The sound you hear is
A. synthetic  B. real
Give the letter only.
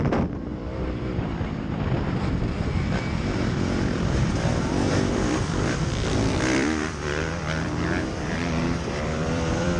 A